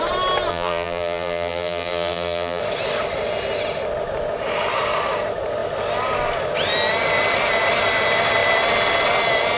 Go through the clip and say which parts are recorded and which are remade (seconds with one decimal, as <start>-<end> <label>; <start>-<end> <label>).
0.0-0.5 recorded; 0.5-2.6 remade; 2.6-9.6 recorded